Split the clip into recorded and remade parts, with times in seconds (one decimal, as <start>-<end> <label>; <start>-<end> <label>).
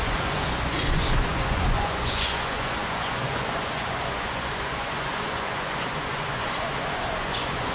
0.0-7.7 remade